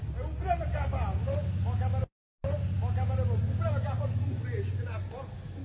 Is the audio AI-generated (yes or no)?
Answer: no